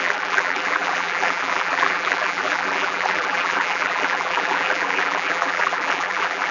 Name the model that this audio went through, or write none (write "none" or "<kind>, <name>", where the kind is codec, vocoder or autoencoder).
vocoder, BigVGAN v2